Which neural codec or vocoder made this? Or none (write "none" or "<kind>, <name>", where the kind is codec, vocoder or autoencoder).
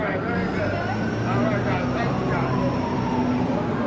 none